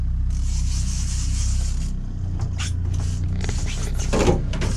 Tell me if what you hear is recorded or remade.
recorded